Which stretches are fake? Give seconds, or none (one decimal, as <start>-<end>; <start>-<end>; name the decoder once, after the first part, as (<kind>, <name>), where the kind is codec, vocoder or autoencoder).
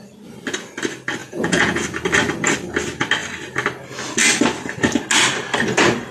1.2-1.8 (vocoder, Vocos)